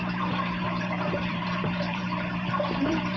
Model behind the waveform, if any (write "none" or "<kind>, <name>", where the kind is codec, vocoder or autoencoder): vocoder, BigVGAN v2